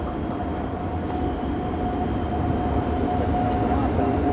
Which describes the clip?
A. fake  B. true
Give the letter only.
B